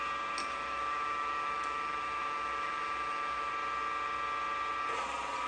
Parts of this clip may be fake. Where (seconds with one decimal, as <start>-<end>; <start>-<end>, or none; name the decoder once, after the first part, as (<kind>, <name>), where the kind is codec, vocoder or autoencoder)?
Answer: 0.4-3.5 (autoencoder, DAC-VAE)

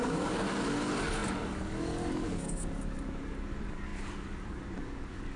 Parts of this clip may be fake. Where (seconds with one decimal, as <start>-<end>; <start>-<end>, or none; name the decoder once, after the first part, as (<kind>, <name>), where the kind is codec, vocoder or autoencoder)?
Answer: 0.0-5.4 (codec, DAC)

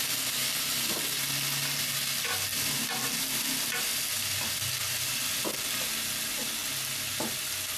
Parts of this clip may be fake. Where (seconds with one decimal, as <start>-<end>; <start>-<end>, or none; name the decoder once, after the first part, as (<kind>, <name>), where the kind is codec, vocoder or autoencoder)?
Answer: none

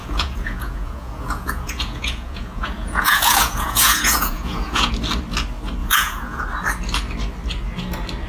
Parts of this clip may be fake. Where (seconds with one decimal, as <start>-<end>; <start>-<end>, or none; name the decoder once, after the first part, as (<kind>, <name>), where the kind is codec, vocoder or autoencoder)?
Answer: 0.0-4.9 (vocoder, Vocos); 5.8-6.4

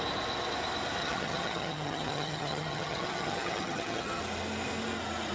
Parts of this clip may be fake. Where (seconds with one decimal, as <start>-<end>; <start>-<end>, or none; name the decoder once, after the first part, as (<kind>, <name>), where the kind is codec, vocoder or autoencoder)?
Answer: 1.0-4.2 (vocoder, HiFi-GAN)

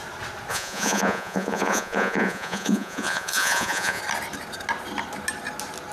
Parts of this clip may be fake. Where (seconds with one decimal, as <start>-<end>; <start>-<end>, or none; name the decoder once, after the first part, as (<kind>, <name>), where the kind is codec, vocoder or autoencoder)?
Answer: 0.5-4.0 (vocoder, Vocos)